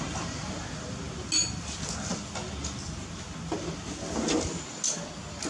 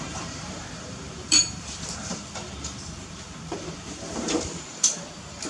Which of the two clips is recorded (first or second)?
first